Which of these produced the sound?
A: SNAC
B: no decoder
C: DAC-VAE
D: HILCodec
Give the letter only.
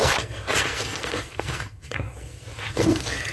A